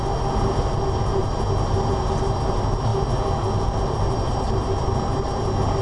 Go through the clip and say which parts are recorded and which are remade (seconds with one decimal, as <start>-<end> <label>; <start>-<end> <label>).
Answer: 0.0-5.8 recorded